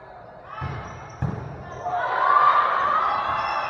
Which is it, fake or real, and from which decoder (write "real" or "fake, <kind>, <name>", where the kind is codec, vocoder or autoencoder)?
real